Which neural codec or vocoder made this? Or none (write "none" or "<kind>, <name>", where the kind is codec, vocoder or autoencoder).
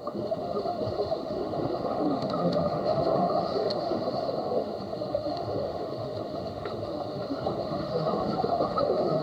autoencoder, DAC-VAE